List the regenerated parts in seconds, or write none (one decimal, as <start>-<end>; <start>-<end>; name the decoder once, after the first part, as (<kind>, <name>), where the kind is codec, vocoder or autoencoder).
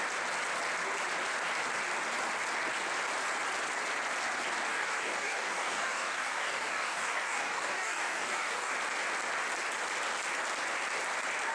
4.7-8.7 (codec, DAC)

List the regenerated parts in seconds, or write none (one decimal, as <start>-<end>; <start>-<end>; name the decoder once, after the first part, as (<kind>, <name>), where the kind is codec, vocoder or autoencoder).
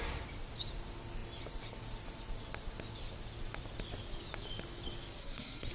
5.2-5.7 (codec, SNAC)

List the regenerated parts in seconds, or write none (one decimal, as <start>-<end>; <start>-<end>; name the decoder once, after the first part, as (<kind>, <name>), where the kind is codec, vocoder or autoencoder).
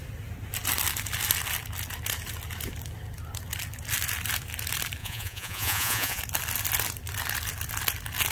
5.0-6.2 (vocoder, Vocos)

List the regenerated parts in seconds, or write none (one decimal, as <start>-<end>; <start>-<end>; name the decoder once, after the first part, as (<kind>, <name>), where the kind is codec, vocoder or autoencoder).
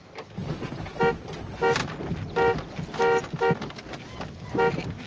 none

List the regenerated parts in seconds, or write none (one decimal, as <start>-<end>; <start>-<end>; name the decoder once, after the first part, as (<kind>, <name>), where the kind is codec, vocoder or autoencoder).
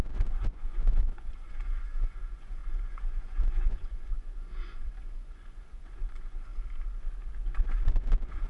0.0-6.5 (vocoder, Vocos); 7.9-8.5